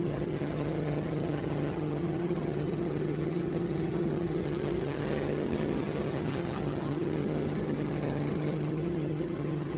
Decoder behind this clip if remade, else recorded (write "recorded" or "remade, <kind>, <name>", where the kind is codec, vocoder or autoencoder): remade, vocoder, HiFi-GAN